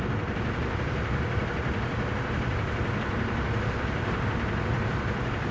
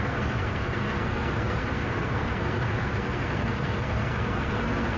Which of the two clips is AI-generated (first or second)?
second